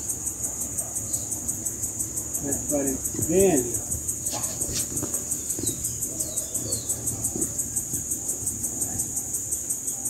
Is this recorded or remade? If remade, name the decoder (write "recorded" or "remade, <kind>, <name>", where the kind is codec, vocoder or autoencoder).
recorded